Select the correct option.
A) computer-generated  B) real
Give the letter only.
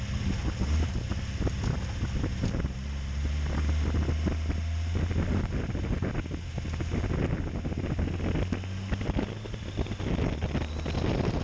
B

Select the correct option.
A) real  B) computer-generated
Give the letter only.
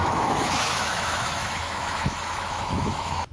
B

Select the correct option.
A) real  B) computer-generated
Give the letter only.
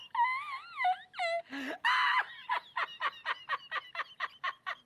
A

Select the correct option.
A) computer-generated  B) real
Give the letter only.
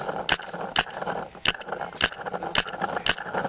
B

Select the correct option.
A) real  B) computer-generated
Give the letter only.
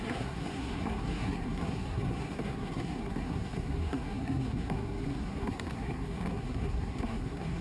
B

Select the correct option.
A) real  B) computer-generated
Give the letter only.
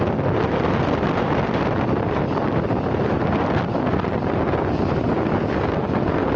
A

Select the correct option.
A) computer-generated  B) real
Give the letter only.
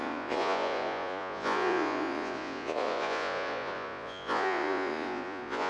A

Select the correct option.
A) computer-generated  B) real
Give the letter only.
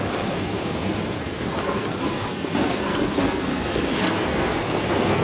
A